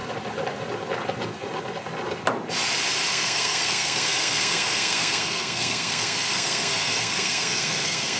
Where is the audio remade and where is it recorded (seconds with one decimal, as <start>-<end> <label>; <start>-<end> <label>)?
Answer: 0.0-3.1 recorded; 3.1-8.2 remade